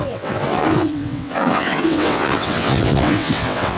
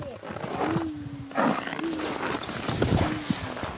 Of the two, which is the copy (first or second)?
first